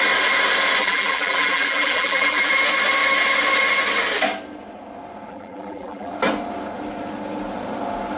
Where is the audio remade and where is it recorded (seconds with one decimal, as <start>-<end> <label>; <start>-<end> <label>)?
0.0-0.8 recorded; 0.8-2.5 remade; 2.5-5.3 recorded; 5.3-6.1 remade; 6.1-8.2 recorded